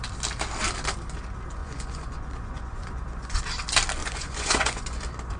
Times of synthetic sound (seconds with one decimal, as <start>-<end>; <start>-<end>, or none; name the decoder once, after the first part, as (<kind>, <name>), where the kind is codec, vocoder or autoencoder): 1.6-3.4 (vocoder, Vocos); 4.0-5.0

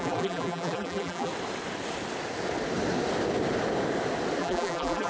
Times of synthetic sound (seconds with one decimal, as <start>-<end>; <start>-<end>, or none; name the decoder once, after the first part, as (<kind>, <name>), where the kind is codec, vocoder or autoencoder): 0.0-1.3 (vocoder, BigVGAN v2); 4.4-5.1

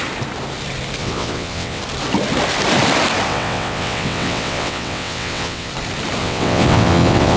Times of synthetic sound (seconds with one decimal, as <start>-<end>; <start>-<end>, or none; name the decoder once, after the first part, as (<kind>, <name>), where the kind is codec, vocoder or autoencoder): 1.0-1.8 (vocoder, WaveNeXt); 3.3-5.7; 6.2-7.4

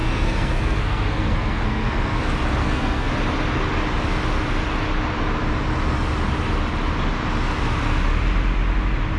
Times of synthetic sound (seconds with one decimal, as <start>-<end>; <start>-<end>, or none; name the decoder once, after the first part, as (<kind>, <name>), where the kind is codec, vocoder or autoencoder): 0.0-2.2 (codec, SNAC); 2.6-3.1

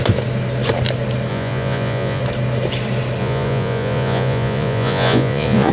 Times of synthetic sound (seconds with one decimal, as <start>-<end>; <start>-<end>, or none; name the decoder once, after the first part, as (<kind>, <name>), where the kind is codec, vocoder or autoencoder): 1.3-2.2 (vocoder, Vocos); 3.2-5.7

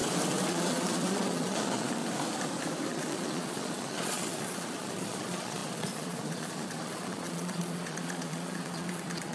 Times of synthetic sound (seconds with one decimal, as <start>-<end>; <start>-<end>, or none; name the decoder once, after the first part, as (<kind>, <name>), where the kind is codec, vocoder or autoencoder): 0.5-2.0 (vocoder, Vocos); 2.9-9.3

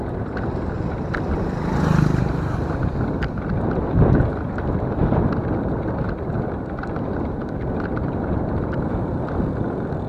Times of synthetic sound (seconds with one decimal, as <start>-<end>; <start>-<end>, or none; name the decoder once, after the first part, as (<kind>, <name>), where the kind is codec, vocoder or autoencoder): 8.0-9.2 (vocoder, BigVGAN v2)

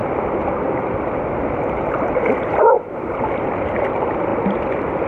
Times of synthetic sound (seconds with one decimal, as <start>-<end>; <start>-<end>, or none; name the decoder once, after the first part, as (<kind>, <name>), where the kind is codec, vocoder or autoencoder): none